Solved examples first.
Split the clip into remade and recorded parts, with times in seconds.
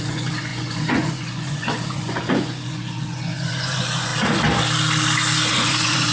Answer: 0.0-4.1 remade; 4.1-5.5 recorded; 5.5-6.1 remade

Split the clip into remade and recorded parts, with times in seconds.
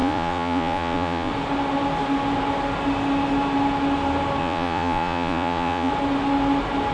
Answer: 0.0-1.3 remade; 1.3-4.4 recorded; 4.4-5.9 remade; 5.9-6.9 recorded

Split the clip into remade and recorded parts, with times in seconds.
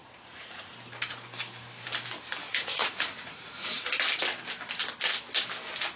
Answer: 0.0-0.7 remade; 0.7-2.5 recorded; 2.5-3.9 remade; 3.9-6.0 recorded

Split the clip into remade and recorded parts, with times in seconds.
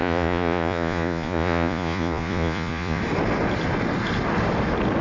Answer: 0.0-3.0 remade; 3.0-5.0 recorded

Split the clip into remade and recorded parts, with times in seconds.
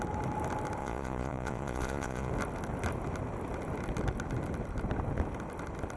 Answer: 0.0-0.8 recorded; 0.8-2.3 remade; 2.3-6.0 recorded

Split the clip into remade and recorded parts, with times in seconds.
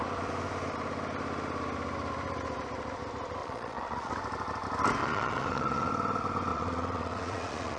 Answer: 0.0-3.4 recorded; 3.4-4.1 remade; 4.1-5.0 recorded; 5.0-5.9 remade; 5.9-6.5 recorded; 6.5-7.8 remade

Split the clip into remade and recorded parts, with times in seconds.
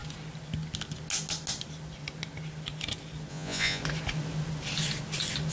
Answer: 0.0-3.3 recorded; 3.3-3.8 remade; 3.8-5.5 recorded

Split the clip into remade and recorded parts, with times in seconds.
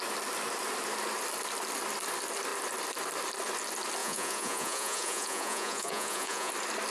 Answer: 0.0-4.0 recorded; 4.0-6.5 remade; 6.5-6.9 recorded